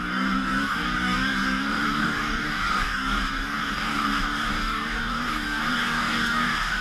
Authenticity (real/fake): fake